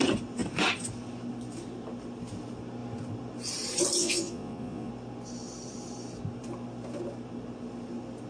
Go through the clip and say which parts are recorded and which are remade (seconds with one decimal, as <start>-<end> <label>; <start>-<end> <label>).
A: 0.0-4.0 recorded; 4.0-4.9 remade; 4.9-8.3 recorded